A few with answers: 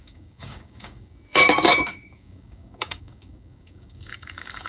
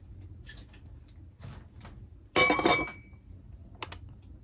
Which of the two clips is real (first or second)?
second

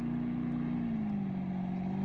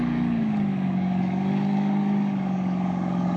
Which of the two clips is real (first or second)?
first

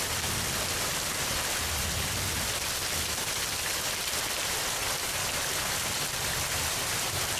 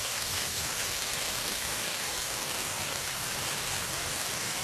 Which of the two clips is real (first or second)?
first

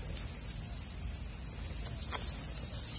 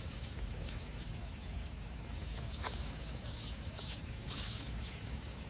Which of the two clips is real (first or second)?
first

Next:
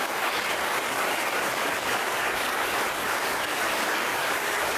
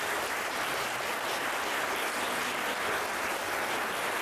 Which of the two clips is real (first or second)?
second